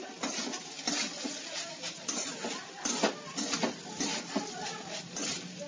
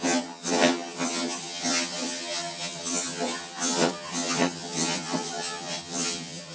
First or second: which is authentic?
first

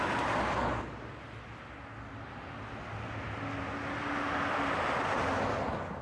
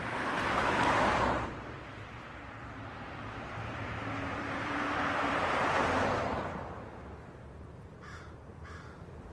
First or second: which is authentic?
first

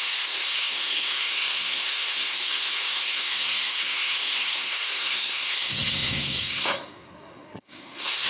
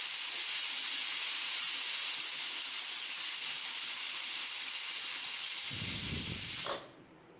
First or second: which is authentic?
second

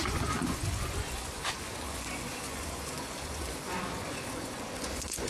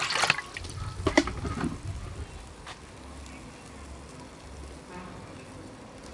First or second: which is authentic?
second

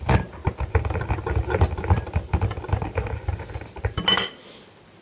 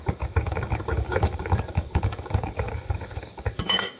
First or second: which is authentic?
first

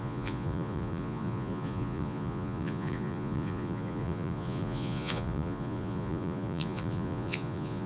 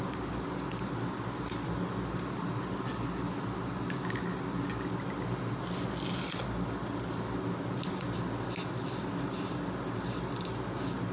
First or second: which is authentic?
second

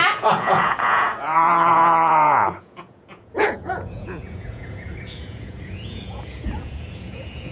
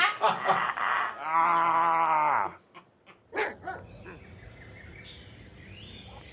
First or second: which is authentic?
second